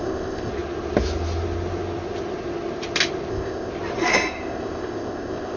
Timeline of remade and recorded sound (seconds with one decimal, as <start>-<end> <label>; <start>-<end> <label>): 0.0-0.5 remade; 0.5-3.3 recorded; 3.3-3.7 remade; 3.7-4.3 recorded; 4.3-5.6 remade